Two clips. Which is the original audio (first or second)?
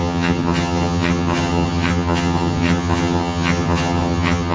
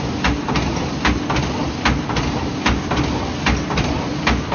second